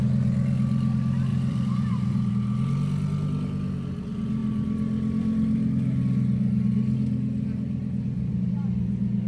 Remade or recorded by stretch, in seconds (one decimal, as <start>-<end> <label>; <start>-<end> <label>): 0.0-1.3 recorded; 1.3-2.3 remade; 2.3-9.3 recorded